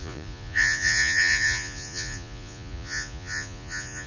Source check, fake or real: fake